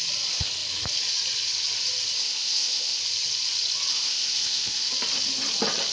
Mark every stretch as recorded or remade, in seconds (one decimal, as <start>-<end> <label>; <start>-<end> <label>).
0.0-2.2 recorded; 2.2-3.0 remade; 3.0-3.9 recorded; 3.9-4.9 remade; 4.9-5.9 recorded

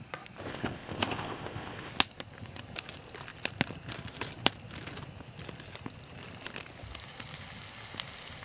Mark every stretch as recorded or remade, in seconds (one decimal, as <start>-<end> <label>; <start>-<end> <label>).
0.0-0.5 recorded; 0.5-1.9 remade; 1.9-8.4 recorded

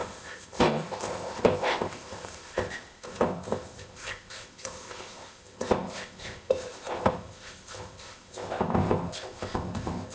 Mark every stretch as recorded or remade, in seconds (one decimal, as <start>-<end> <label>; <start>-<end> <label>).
0.0-10.1 remade